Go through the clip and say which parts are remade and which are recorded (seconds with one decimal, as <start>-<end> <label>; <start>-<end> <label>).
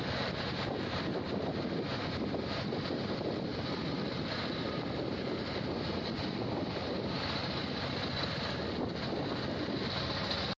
0.0-10.6 recorded